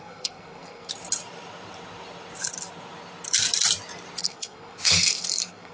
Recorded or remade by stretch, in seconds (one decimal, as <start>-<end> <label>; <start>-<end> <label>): 0.0-0.9 remade; 0.9-4.2 recorded; 4.2-5.7 remade